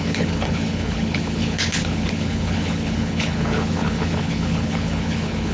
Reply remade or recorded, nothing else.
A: remade